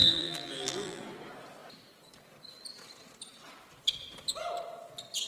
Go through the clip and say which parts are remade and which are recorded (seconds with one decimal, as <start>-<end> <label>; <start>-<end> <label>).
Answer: 0.0-1.0 remade; 1.0-5.3 recorded